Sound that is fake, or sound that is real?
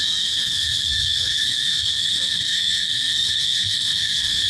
fake